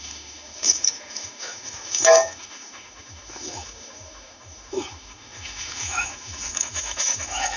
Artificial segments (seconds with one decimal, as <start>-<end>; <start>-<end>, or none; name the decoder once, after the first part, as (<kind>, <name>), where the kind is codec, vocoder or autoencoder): 0.0-7.6 (autoencoder, DAC-VAE)